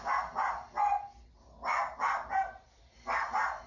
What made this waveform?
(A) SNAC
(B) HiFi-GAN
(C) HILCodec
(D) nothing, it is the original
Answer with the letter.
D